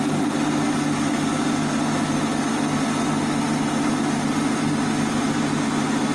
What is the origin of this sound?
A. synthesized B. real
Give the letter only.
B